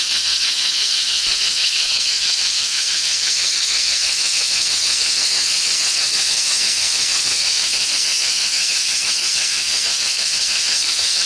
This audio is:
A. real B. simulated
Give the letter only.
B